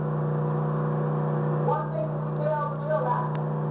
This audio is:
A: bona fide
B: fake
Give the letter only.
A